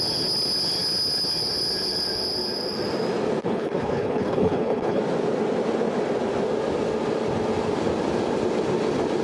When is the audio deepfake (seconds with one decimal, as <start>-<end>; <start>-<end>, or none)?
3.4-5.0

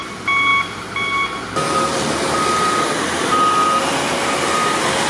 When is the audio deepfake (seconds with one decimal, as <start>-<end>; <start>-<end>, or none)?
none